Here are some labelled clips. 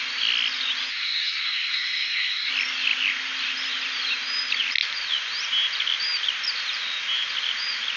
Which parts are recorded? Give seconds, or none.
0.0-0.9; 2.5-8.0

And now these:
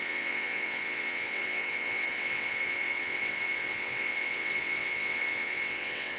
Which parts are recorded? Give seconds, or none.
none

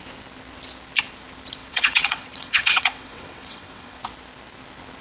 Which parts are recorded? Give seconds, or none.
0.0-1.6; 4.0-5.0

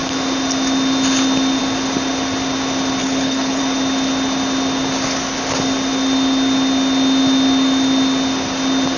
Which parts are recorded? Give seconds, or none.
0.0-3.0; 3.6-9.0